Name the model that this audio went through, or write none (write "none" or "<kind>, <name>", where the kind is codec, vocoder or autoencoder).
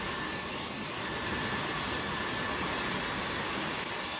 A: none